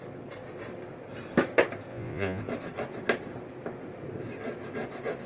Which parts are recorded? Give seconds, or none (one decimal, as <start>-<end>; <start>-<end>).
0.0-1.9; 2.4-5.3